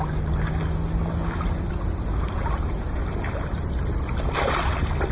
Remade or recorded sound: recorded